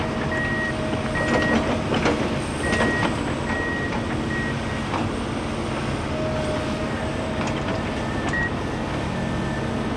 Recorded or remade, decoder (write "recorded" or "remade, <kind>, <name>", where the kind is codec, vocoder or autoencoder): recorded